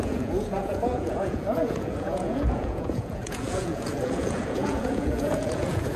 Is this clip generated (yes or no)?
yes